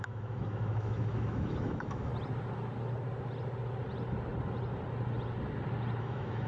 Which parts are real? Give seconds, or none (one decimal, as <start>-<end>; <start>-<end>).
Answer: 2.1-6.0